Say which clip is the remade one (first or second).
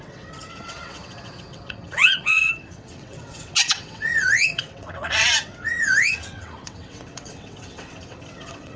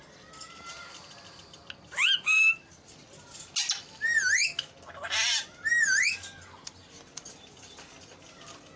first